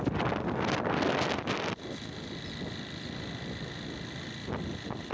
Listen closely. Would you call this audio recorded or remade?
recorded